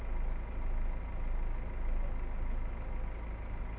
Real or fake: real